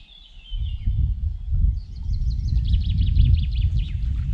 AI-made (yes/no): no